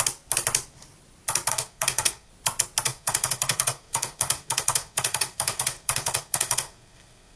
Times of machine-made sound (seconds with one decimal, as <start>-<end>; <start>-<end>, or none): 1.5-2.3; 2.9-7.4